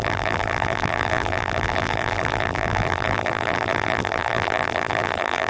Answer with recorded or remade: remade